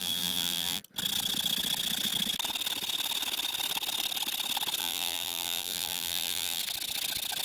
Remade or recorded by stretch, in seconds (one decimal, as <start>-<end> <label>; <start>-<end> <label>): 0.0-0.8 remade; 0.8-4.8 recorded; 4.8-6.6 remade; 6.6-7.4 recorded